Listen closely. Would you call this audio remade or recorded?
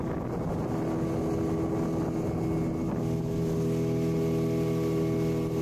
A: recorded